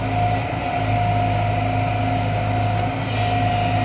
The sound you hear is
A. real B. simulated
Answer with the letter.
A